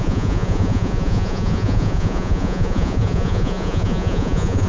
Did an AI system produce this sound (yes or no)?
yes